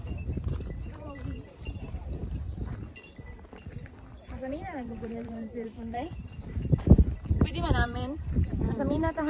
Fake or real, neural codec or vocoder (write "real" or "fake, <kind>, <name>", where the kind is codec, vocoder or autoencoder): fake, vocoder, BigVGAN v2